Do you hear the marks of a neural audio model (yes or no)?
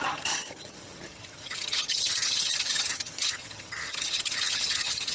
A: yes